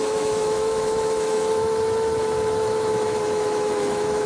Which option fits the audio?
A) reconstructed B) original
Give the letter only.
A